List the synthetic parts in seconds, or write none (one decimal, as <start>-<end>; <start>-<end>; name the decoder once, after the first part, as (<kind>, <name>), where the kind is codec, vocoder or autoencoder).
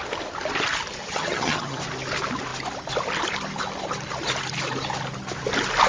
1.0-1.8 (vocoder, HiFi-GAN)